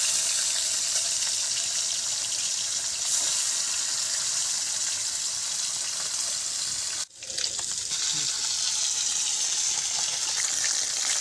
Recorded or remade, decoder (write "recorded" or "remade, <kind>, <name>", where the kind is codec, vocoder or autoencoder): recorded